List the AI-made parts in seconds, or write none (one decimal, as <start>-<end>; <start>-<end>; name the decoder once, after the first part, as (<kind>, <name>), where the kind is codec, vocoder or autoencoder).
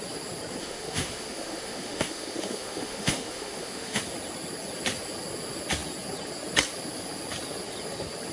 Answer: 0.6-4.0 (autoencoder, DAC-VAE)